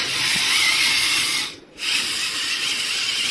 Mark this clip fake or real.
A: fake